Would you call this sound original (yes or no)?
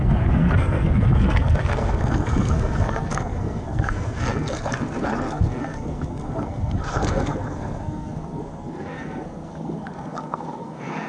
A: no